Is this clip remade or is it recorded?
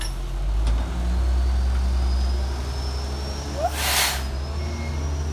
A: recorded